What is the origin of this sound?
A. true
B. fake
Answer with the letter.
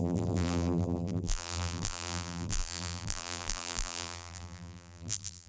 B